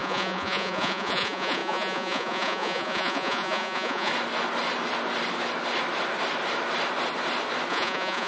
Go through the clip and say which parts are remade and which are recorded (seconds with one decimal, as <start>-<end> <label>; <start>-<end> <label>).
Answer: 0.0-4.1 remade; 4.1-7.7 recorded; 7.7-8.3 remade